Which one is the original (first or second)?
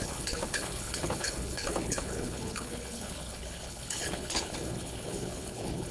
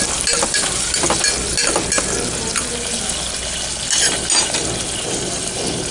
second